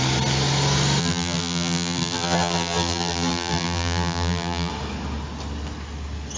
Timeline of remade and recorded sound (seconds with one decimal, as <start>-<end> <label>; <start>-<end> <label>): 0.0-1.0 recorded; 1.0-4.7 remade; 4.7-6.4 recorded